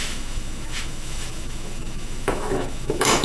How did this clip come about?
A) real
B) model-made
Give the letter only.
B